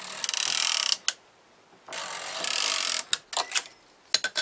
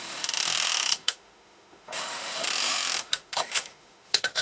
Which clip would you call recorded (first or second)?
first